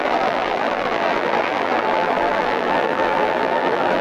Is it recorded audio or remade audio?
remade